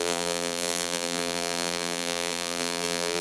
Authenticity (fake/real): fake